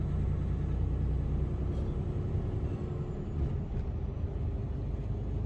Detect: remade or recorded recorded